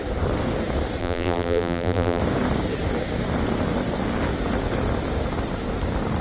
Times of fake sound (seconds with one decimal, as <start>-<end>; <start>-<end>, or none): 1.0-2.2